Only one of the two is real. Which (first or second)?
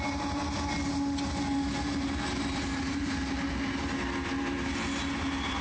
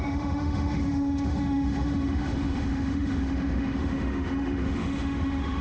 first